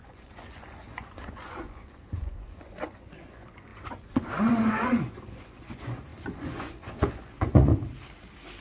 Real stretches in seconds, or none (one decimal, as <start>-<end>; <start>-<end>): 7.7-8.6